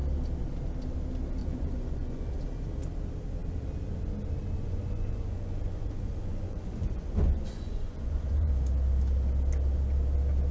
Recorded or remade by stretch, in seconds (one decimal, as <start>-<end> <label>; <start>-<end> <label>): 0.0-1.4 recorded; 1.4-2.3 remade; 2.3-4.6 recorded; 4.6-8.5 remade; 8.5-10.5 recorded